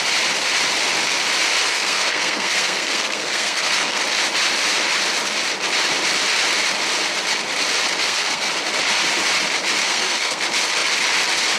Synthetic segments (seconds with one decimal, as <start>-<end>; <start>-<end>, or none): 1.7-4.0; 8.0-8.5; 9.8-10.4